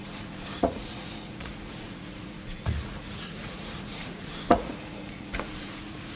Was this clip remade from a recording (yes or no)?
yes